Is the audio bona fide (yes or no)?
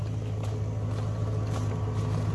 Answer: yes